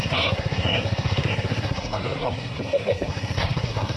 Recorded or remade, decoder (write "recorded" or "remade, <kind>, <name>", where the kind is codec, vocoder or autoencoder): remade, codec, SNAC